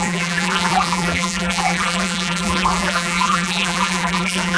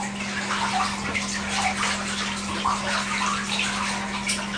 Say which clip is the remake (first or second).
first